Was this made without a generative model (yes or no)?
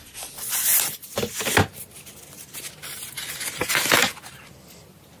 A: yes